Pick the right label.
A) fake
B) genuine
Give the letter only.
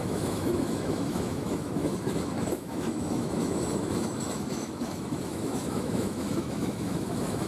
A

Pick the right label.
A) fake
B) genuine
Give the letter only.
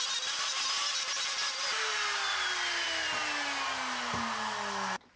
B